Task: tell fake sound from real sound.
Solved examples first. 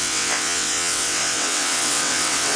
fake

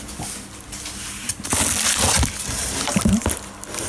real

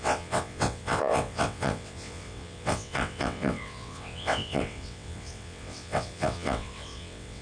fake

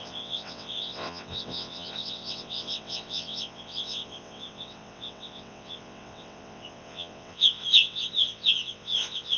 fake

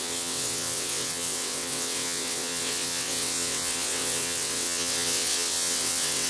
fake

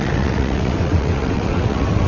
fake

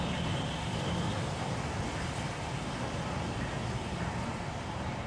real